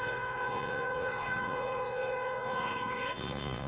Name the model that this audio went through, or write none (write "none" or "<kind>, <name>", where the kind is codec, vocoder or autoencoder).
vocoder, Vocos